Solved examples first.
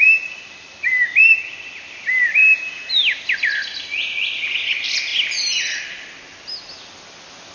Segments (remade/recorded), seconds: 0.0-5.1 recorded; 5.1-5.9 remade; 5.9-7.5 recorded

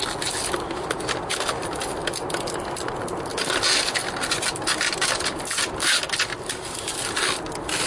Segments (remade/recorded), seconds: 0.0-7.9 recorded

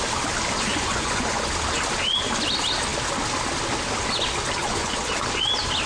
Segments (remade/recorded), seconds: 0.0-0.7 recorded; 0.7-1.5 remade; 1.5-4.6 recorded; 4.6-5.1 remade; 5.1-5.9 recorded

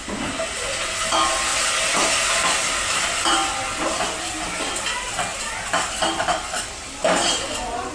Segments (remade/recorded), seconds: 0.0-7.9 recorded